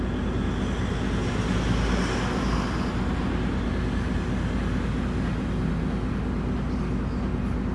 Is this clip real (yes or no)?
yes